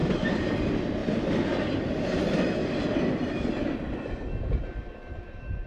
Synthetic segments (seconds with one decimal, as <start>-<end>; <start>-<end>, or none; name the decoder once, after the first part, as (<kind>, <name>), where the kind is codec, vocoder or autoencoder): 0.0-1.0 (vocoder, BigVGAN v2); 4.4-5.7